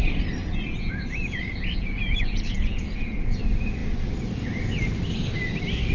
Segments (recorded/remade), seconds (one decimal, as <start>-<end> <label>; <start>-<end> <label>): 0.0-0.4 recorded; 0.4-3.4 remade; 3.4-5.9 recorded